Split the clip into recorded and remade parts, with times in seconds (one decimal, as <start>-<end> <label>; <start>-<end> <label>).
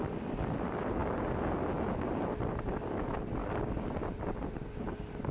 0.0-5.3 recorded